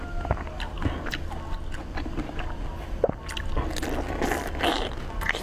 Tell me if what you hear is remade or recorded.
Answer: recorded